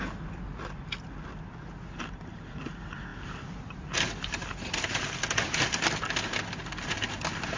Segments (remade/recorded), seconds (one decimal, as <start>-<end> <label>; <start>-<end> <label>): 0.0-7.6 recorded